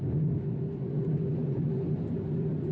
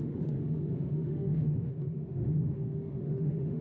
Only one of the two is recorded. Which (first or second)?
first